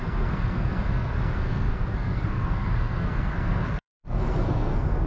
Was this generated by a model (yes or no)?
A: yes